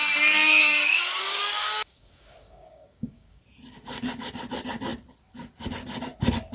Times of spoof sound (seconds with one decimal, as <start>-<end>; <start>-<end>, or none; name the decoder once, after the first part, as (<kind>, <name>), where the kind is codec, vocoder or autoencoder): 0.0-3.4 (codec, DAC)